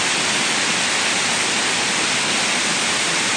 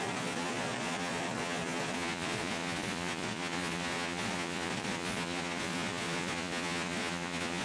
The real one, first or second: first